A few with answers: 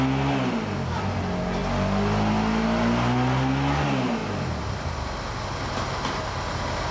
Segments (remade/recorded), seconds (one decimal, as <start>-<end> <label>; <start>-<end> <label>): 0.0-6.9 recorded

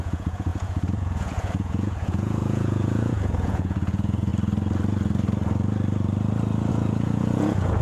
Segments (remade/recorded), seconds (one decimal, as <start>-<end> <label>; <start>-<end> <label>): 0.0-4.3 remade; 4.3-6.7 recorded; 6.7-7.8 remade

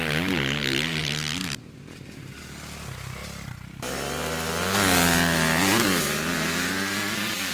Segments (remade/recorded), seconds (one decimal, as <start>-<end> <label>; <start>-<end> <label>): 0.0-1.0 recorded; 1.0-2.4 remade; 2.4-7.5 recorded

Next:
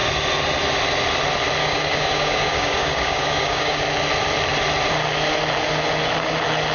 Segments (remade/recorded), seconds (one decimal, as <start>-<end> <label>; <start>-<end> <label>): 0.0-1.6 recorded; 1.6-3.8 remade; 3.8-6.7 recorded